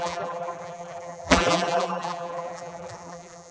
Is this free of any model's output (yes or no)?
no